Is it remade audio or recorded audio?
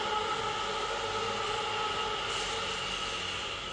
recorded